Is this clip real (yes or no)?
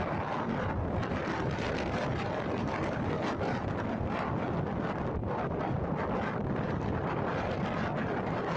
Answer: yes